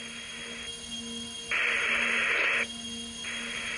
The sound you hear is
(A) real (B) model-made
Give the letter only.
A